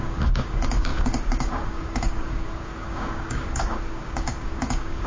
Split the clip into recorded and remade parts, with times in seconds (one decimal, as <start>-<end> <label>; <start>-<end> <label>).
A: 0.0-5.1 remade